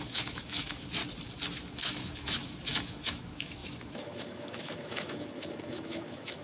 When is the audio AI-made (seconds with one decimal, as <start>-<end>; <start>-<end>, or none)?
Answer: 0.0-1.0; 1.5-6.4